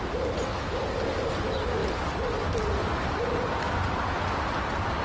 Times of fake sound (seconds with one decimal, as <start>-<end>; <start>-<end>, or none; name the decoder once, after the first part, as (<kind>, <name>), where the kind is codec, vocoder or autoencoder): none